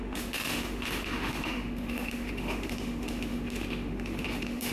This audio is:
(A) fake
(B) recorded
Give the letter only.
A